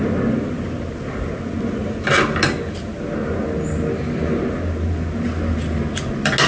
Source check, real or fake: real